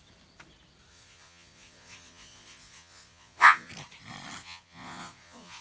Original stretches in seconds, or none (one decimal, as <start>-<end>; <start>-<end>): 0.0-0.9; 3.7-4.4

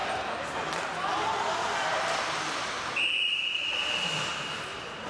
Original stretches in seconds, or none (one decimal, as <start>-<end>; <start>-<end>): 0.0-5.1

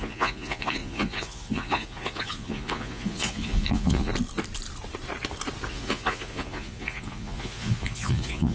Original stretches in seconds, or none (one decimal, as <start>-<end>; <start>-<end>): 4.1-5.7

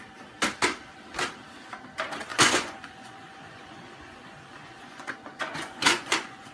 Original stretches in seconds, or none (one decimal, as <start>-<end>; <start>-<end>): 0.0-2.3